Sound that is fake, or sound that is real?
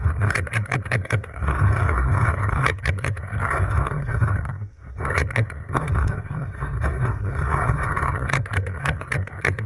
fake